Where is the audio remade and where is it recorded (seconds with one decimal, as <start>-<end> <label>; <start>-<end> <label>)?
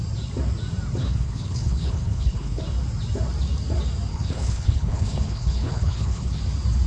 0.0-1.0 recorded; 1.0-2.6 remade; 2.6-4.1 recorded; 4.1-6.4 remade; 6.4-6.9 recorded